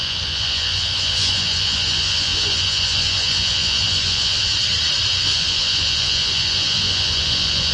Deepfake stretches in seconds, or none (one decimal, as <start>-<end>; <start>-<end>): 0.0-4.5; 5.1-7.7